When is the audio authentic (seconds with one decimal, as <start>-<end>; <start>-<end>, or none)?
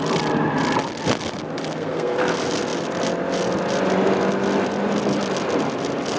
0.0-1.7; 2.2-6.2